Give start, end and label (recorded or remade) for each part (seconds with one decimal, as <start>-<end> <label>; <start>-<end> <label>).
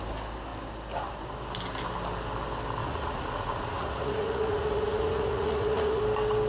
0.0-2.8 recorded; 2.8-6.0 remade; 6.0-6.5 recorded